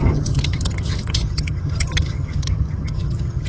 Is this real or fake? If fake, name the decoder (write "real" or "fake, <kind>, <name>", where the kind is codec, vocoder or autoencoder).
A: fake, vocoder, HiFi-GAN